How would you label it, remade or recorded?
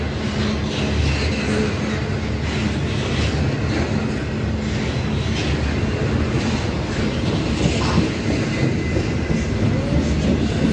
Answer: recorded